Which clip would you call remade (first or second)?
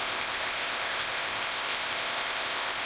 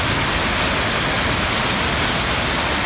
first